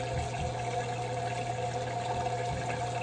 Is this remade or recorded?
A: recorded